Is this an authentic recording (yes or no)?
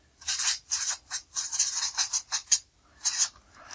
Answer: no